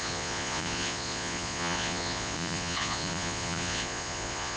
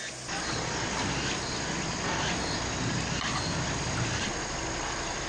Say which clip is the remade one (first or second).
first